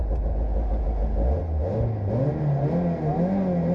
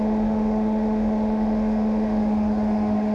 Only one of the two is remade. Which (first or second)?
second